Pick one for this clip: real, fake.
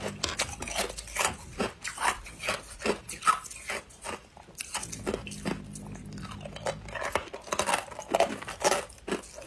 real